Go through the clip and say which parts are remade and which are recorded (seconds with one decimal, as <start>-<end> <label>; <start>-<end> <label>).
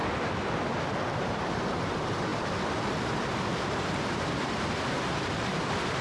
0.0-1.2 recorded; 1.2-2.3 remade; 2.3-3.5 recorded; 3.5-6.0 remade